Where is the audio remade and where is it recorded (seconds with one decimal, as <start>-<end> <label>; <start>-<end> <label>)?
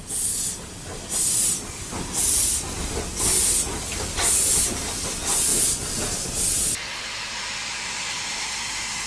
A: 0.0-9.1 recorded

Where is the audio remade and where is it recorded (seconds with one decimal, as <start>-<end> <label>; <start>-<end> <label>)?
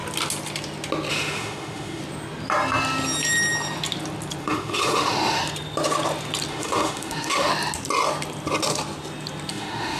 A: 0.0-1.1 recorded; 1.1-2.0 remade; 2.0-4.4 recorded; 4.4-5.4 remade; 5.4-6.5 recorded; 6.5-7.5 remade; 7.5-9.5 recorded; 9.5-10.0 remade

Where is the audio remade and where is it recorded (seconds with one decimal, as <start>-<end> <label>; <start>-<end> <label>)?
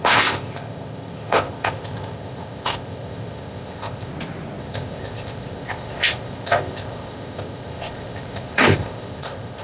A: 0.0-4.1 remade; 4.1-4.6 recorded; 4.6-9.6 remade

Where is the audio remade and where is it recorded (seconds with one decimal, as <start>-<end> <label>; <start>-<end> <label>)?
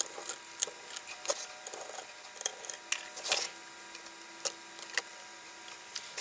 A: 0.0-2.5 remade; 2.5-5.0 recorded; 5.0-6.2 remade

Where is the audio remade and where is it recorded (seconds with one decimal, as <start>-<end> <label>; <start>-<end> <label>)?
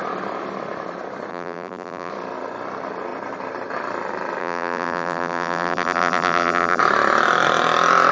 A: 0.0-1.3 recorded; 1.3-2.1 remade; 2.1-4.4 recorded; 4.4-6.8 remade; 6.8-8.1 recorded